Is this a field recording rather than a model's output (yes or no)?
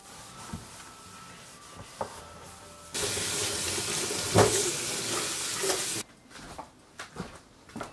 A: yes